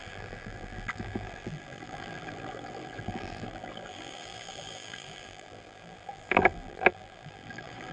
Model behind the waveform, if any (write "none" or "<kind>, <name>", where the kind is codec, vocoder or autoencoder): vocoder, BigVGAN v2